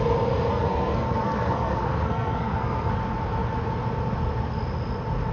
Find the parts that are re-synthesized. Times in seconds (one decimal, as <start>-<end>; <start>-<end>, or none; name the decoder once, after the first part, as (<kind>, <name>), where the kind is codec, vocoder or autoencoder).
0.5-2.9 (codec, SNAC)